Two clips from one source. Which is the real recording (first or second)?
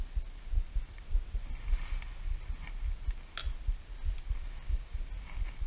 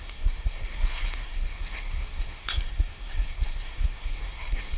first